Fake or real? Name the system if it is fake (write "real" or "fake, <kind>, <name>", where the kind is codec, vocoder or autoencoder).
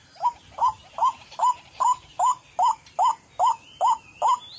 real